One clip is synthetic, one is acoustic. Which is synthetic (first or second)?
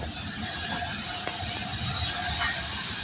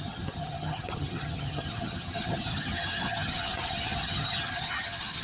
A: second